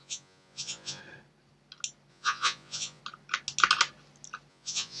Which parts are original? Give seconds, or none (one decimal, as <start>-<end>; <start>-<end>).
1.0-2.1; 3.0-4.5